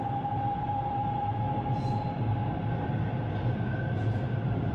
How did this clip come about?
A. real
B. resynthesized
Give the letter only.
A